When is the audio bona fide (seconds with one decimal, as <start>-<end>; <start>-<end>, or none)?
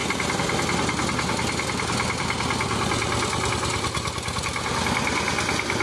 none